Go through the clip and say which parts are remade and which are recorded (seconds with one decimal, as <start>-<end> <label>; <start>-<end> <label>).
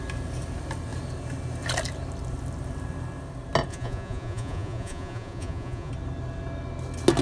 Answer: 0.0-3.7 recorded; 3.7-5.9 remade; 5.9-7.2 recorded